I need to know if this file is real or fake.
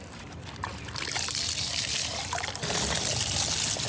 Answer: real